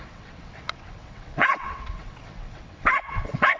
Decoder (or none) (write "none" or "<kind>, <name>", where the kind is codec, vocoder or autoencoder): vocoder, WaveNeXt